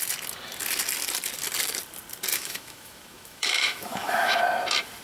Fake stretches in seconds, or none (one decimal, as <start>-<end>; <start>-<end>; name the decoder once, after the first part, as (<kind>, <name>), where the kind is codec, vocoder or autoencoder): 2.3-4.4 (autoencoder, DAC-VAE)